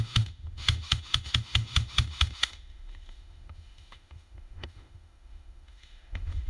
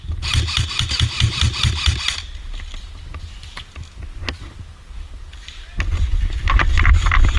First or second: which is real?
second